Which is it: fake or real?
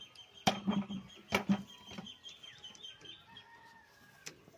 real